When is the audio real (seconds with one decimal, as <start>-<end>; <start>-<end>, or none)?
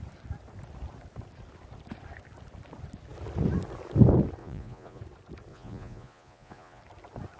0.0-4.4; 5.0-5.5; 6.8-7.4